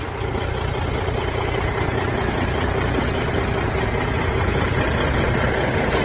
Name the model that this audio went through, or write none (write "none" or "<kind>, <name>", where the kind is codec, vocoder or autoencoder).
none